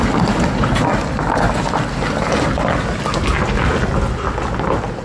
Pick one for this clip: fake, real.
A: real